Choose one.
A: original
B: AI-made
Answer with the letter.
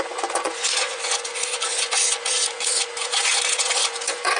B